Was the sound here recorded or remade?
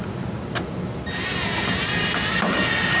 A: recorded